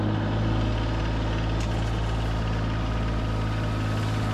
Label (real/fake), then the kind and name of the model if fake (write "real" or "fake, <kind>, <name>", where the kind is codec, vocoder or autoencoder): real